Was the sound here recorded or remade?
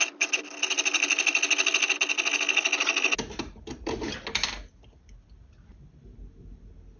recorded